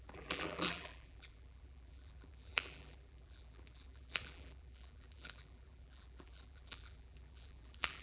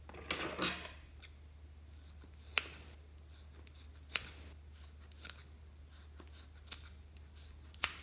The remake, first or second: first